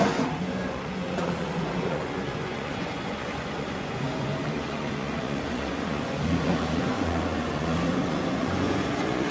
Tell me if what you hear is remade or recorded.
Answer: remade